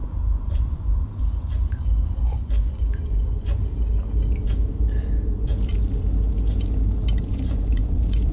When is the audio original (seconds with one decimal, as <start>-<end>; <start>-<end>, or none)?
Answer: 3.6-7.2